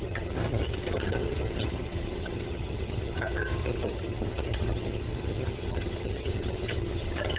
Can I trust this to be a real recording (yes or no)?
no